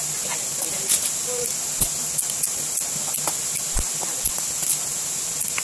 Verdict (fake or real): real